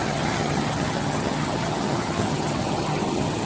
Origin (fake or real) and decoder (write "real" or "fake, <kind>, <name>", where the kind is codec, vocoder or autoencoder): fake, vocoder, HiFi-GAN